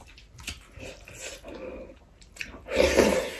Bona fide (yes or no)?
yes